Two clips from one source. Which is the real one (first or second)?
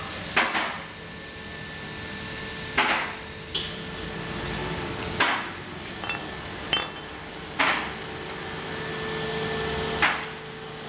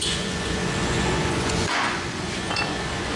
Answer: first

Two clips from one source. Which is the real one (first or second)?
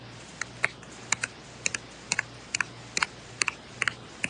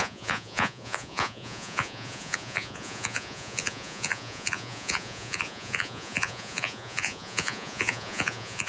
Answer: first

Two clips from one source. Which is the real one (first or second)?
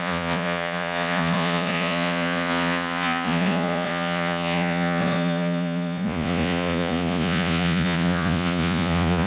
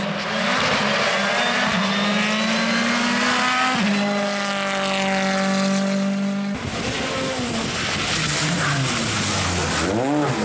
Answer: second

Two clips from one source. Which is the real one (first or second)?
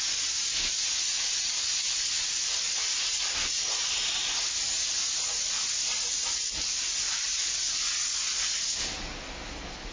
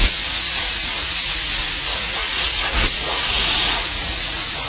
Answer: first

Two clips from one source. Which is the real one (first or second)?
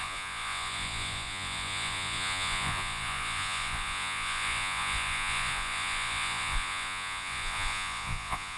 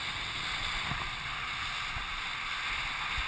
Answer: second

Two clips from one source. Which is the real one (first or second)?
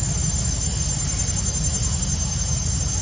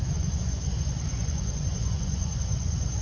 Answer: first